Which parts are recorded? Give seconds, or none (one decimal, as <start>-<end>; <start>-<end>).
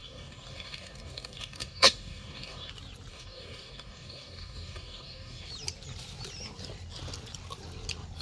2.7-3.1; 5.5-8.2